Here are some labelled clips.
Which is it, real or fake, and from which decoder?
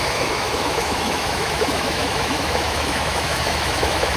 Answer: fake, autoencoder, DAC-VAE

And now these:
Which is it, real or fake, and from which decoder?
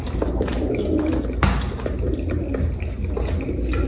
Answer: real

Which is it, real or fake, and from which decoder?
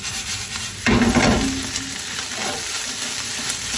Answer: real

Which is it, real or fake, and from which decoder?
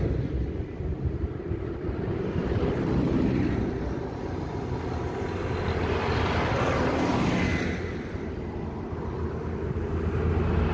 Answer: real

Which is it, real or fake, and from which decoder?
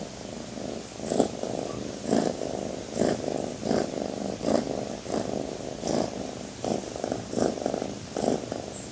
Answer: fake, vocoder, BigVGAN v2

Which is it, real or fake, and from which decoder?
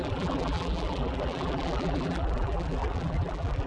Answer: fake, vocoder, BigVGAN v2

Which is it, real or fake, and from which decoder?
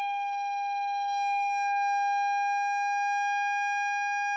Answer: fake, autoencoder, DAC-VAE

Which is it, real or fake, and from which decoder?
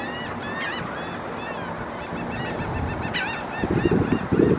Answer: real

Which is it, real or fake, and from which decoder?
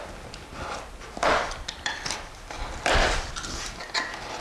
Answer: real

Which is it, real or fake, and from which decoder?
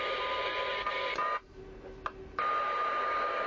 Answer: real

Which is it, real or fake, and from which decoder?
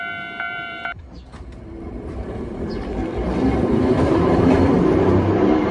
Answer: fake, vocoder, BigVGAN v2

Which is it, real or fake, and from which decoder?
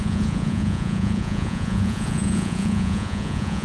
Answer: fake, vocoder, Vocos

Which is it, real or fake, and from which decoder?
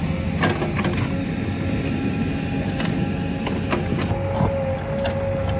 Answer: real